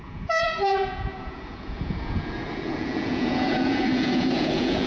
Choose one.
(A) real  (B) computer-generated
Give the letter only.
B